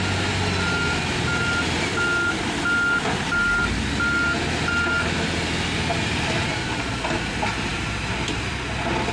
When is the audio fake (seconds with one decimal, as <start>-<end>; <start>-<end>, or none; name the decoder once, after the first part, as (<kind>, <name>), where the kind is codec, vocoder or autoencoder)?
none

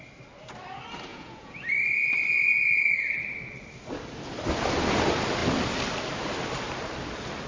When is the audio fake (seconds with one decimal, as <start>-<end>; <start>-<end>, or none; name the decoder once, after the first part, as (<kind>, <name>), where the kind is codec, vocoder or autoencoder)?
1.1-1.7 (vocoder, Vocos)

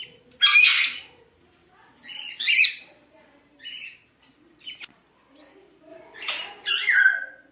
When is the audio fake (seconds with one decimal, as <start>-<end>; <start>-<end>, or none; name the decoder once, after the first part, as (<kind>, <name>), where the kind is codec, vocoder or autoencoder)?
1.6-4.1 (vocoder, BigVGAN v2); 5.9-6.7

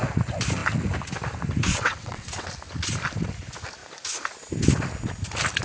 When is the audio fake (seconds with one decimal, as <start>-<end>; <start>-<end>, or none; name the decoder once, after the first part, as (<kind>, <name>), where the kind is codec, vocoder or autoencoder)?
1.7-2.5 (vocoder, WaveNeXt)

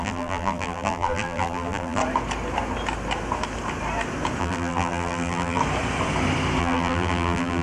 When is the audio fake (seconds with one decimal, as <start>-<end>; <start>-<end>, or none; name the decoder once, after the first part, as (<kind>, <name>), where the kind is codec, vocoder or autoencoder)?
0.0-2.0 (vocoder, BigVGAN v2); 4.4-5.6; 6.6-7.6